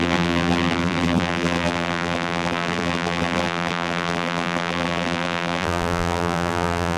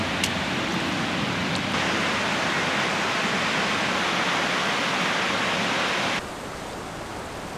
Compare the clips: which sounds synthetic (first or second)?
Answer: first